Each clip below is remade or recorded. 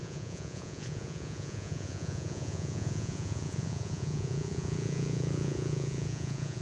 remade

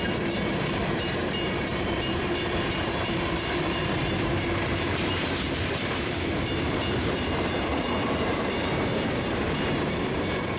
remade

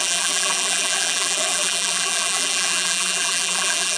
remade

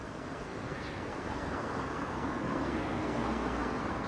remade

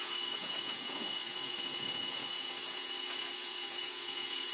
remade